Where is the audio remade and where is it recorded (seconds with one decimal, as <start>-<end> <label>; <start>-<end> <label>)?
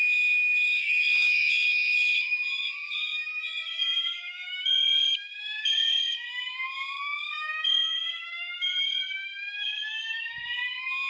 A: 0.0-11.1 remade